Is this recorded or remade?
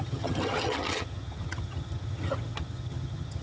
remade